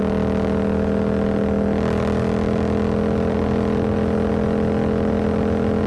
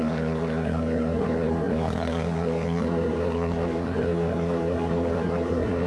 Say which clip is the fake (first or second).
second